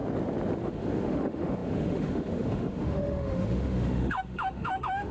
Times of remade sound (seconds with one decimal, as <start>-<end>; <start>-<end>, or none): 0.6-5.1